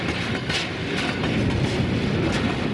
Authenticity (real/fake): real